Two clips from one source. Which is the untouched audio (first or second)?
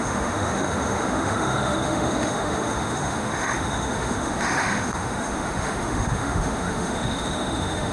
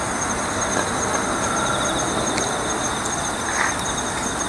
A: second